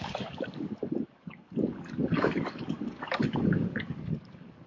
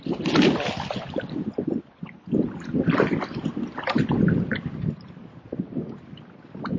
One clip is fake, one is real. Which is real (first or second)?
second